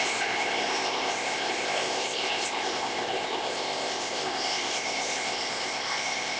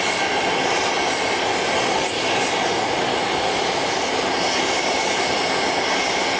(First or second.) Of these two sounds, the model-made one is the first